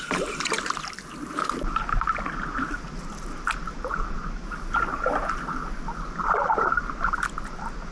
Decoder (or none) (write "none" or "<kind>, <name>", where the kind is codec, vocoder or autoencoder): none